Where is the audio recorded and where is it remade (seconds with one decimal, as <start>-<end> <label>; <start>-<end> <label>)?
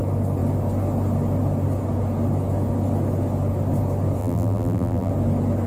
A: 0.0-4.2 recorded; 4.2-5.1 remade; 5.1-5.7 recorded